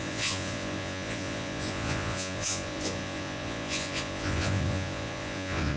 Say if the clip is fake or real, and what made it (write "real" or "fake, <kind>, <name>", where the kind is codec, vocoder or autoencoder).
fake, vocoder, Vocos